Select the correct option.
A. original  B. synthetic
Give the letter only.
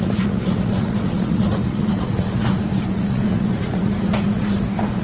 B